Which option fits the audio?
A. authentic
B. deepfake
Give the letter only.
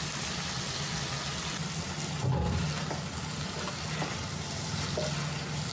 A